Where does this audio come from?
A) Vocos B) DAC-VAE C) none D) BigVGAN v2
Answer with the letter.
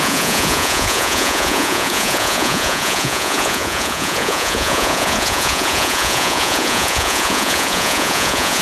A